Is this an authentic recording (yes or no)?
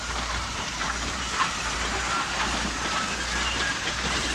no